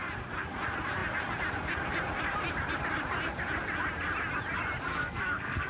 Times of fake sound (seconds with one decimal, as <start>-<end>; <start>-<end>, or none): 4.9-5.7